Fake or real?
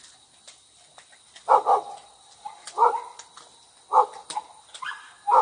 real